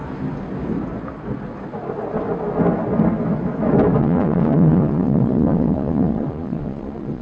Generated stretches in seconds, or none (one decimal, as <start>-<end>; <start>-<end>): 4.0-7.2